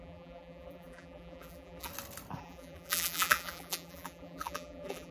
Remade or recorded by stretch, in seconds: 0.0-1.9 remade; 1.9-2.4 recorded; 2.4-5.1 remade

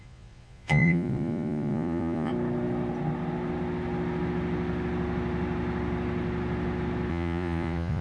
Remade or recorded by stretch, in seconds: 0.0-2.3 remade; 2.3-7.1 recorded; 7.1-8.0 remade

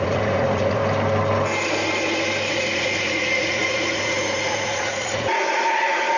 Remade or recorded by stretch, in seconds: 0.0-0.8 remade; 0.8-2.5 recorded; 2.5-6.2 remade

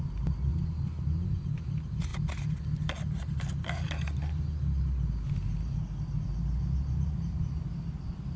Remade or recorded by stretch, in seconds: 0.0-8.4 recorded

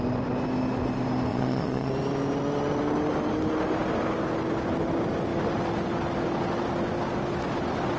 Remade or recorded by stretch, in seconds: 0.0-1.3 recorded; 1.3-1.9 remade; 1.9-8.0 recorded

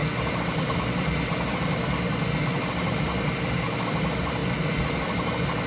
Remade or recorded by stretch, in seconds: 0.0-5.7 recorded

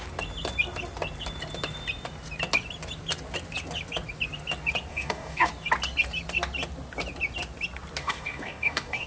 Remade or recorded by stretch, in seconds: 0.0-4.9 recorded; 4.9-5.5 remade; 5.5-8.0 recorded; 8.0-9.1 remade

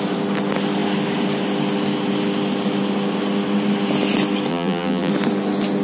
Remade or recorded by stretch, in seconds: 0.0-4.5 recorded; 4.5-5.1 remade; 5.1-5.8 recorded